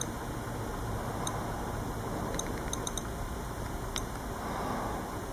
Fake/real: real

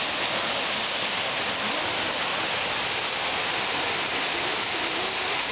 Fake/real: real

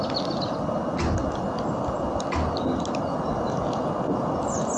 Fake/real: real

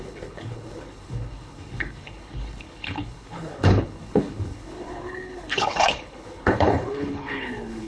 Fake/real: fake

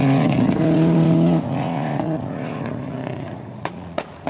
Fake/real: fake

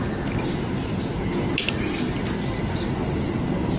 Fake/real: real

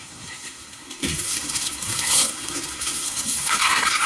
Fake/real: fake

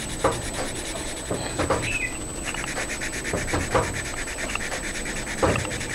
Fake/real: fake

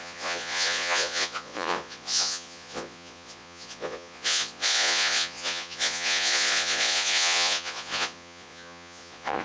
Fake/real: fake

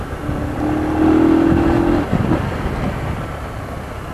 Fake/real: real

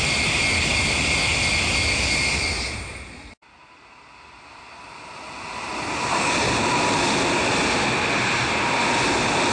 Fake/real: real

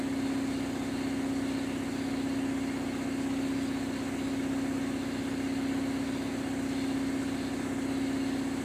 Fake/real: real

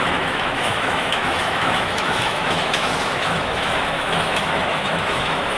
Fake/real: fake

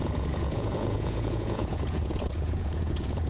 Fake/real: fake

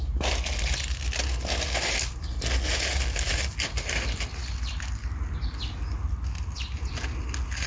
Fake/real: real